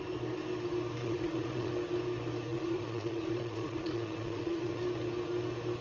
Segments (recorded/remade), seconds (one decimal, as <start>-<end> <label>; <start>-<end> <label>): 0.0-1.0 recorded; 1.0-1.7 remade; 1.7-2.5 recorded; 2.5-4.8 remade; 4.8-5.8 recorded